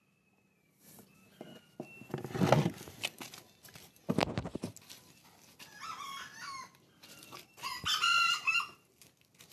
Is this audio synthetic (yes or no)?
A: no